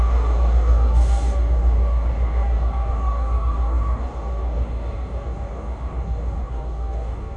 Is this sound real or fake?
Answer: fake